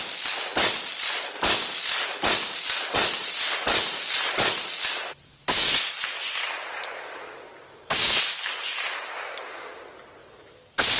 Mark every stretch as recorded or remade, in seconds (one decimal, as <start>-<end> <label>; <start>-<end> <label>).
0.0-11.0 recorded